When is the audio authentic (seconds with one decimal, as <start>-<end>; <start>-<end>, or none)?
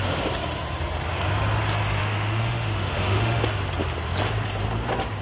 0.0-2.0; 3.4-5.2